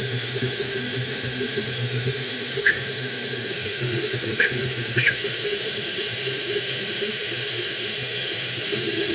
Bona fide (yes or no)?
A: no